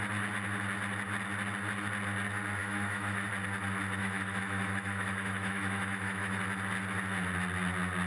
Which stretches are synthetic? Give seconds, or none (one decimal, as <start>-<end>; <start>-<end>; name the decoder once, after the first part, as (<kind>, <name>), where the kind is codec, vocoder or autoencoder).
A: 2.6-3.3 (autoencoder, DAC-VAE); 4.0-6.4